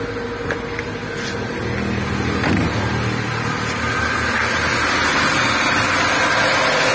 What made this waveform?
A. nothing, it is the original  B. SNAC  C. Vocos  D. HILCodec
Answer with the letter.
A